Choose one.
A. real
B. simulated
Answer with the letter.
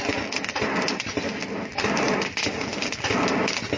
A